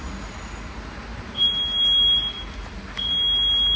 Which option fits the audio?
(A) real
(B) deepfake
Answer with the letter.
A